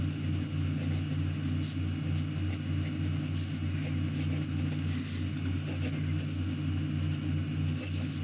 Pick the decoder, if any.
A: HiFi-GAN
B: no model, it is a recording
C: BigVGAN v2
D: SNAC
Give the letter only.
B